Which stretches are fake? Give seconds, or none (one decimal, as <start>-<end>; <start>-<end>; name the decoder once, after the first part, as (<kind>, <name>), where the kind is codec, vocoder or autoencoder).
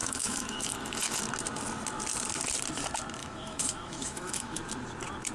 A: 0.0-1.2 (autoencoder, DAC-VAE); 3.2-4.6